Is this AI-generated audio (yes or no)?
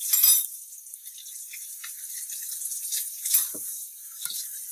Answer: no